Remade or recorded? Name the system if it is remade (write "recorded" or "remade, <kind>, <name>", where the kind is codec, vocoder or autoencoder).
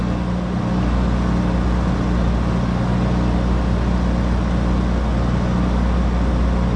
recorded